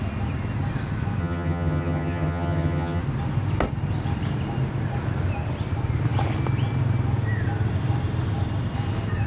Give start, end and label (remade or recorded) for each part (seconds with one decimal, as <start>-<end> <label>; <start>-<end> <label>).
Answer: 0.0-1.2 recorded; 1.2-3.0 remade; 3.0-9.3 recorded